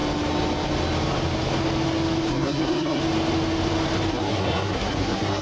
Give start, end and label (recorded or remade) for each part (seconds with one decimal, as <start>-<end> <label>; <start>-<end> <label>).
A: 0.0-2.3 recorded; 2.3-3.0 remade; 3.0-4.1 recorded; 4.1-5.4 remade